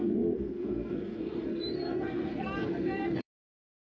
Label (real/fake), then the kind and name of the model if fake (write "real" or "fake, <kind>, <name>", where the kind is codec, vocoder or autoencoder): fake, codec, SNAC